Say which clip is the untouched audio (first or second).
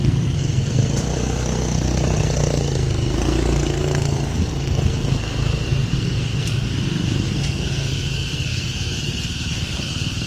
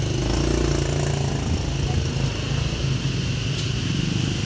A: second